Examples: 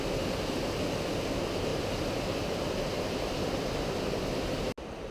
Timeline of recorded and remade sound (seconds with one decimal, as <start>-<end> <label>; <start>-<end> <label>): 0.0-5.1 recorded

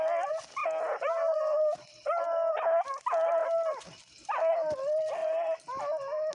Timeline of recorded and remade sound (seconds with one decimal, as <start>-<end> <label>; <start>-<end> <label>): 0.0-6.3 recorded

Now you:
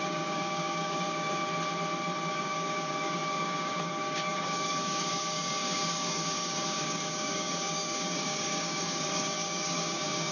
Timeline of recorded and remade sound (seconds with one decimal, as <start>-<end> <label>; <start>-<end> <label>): 0.0-1.4 remade; 1.4-2.3 recorded; 2.3-10.3 remade

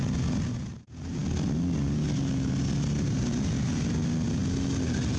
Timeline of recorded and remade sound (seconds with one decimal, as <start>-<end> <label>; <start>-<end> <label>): 0.0-5.2 recorded

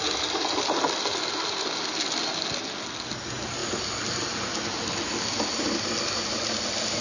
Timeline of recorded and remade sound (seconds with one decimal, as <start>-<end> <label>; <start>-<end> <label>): 0.0-7.0 recorded

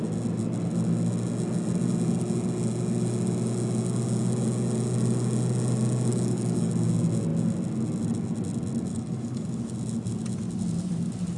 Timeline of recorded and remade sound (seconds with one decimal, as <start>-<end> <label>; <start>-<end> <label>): 0.0-6.1 recorded; 6.1-6.7 remade; 6.7-8.9 recorded; 8.9-9.6 remade; 9.6-11.4 recorded